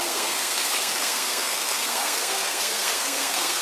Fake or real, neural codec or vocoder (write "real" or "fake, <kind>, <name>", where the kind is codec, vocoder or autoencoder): fake, codec, SNAC